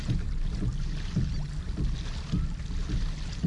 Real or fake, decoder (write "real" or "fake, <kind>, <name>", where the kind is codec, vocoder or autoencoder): real